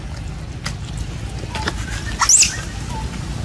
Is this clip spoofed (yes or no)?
no